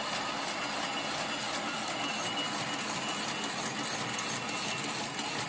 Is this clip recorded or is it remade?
recorded